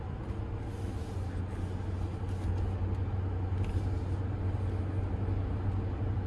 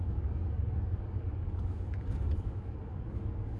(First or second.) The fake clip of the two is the second